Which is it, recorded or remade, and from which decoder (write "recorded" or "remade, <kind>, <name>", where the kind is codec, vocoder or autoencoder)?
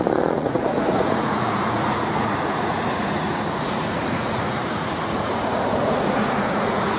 remade, vocoder, Vocos